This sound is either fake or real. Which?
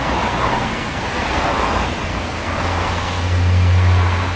fake